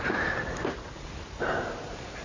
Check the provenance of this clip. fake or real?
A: fake